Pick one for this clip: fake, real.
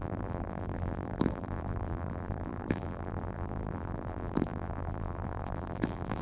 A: fake